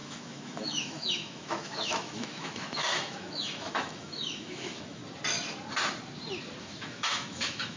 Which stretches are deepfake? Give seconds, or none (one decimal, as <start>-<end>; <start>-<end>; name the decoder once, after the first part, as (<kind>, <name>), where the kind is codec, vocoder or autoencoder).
0.0-5.0 (autoencoder, DAC-VAE); 6.6-7.8